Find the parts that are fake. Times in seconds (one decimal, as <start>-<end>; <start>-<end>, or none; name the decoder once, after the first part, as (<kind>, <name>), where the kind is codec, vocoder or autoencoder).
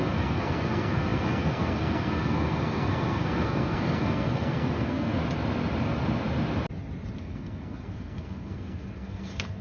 0.0-5.2 (codec, SNAC); 7.2-9.6